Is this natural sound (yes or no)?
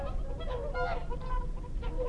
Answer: no